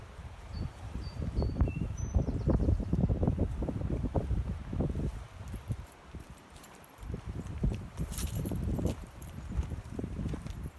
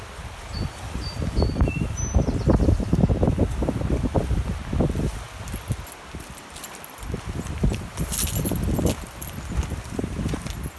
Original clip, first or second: second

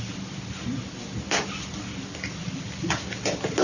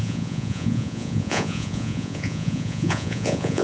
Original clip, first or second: first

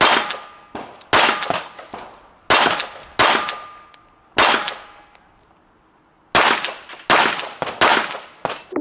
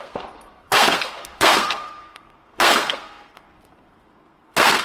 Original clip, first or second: first